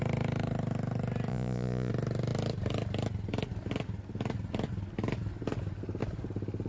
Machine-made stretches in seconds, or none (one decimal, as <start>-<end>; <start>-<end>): 1.3-1.9